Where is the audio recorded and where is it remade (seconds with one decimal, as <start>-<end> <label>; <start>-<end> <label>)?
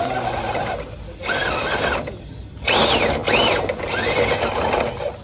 0.0-5.2 recorded